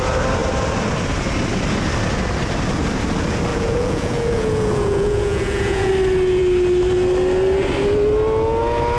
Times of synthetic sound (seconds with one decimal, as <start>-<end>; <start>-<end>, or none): 3.5-5.9